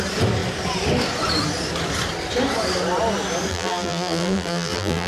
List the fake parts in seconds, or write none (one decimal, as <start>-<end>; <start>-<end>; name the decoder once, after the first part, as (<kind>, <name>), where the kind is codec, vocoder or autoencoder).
3.5-5.1 (vocoder, BigVGAN v2)